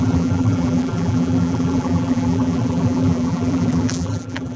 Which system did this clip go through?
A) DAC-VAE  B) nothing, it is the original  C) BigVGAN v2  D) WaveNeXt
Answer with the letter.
C